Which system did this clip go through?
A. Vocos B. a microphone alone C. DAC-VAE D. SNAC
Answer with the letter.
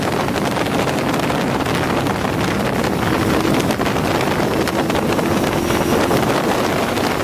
B